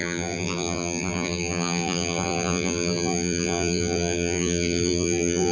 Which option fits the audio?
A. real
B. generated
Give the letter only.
B